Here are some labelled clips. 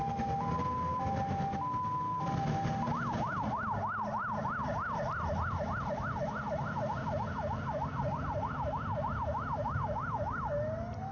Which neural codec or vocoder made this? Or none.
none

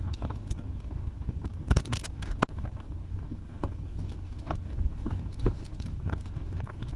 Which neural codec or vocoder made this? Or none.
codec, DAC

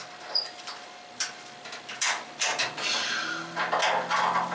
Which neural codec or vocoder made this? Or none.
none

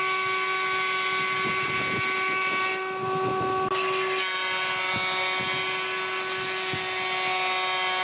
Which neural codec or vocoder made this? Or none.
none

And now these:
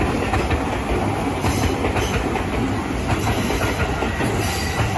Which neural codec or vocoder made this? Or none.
none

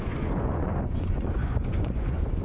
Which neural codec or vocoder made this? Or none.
vocoder, Vocos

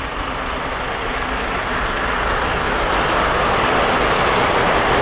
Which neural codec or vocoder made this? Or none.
none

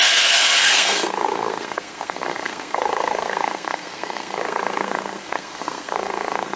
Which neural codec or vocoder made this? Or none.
codec, SNAC